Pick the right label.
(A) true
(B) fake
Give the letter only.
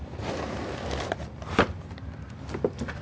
A